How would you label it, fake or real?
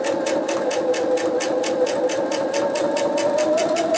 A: real